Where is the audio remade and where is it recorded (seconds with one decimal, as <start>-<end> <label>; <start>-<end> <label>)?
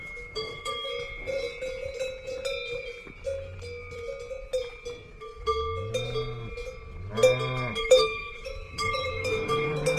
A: 0.0-0.9 remade; 0.9-5.1 recorded; 5.1-5.5 remade; 5.5-7.8 recorded; 7.8-10.0 remade